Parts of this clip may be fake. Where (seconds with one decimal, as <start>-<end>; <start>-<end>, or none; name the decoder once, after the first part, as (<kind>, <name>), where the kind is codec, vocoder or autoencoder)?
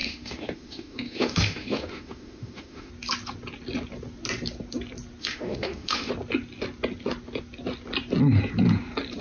0.0-2.9 (autoencoder, DAC-VAE); 5.2-6.1